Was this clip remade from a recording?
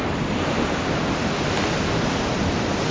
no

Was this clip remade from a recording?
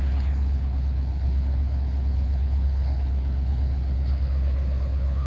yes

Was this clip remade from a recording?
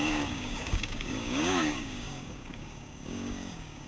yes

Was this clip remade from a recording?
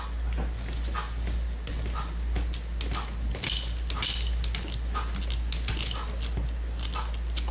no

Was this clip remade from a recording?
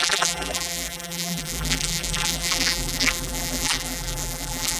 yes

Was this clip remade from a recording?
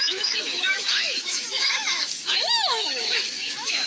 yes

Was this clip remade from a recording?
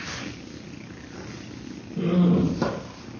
no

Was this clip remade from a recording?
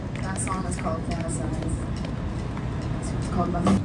no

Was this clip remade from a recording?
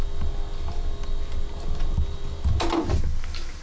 no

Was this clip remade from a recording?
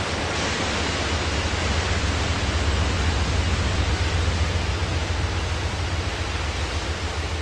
no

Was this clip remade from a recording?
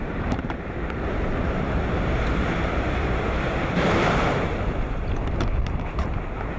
yes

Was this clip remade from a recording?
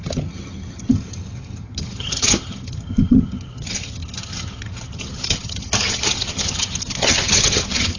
yes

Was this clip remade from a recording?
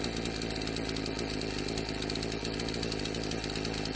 no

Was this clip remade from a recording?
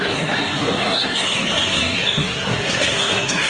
yes